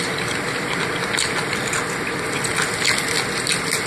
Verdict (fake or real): real